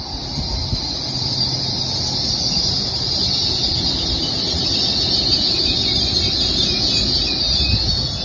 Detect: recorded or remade recorded